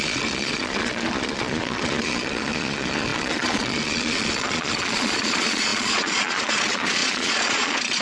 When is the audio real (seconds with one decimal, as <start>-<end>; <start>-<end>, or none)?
none